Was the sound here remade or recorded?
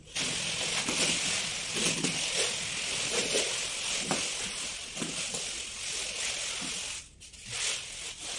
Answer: recorded